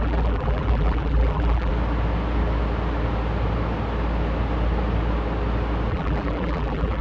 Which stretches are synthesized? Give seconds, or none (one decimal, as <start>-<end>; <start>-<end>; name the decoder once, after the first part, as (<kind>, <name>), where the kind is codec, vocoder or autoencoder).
0.0-1.7 (vocoder, BigVGAN v2); 5.9-7.0